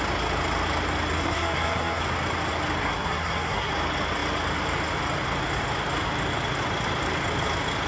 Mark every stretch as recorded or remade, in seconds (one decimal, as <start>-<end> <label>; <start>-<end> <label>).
0.0-1.2 recorded; 1.2-2.0 remade; 2.0-2.8 recorded; 2.8-3.7 remade; 3.7-7.9 recorded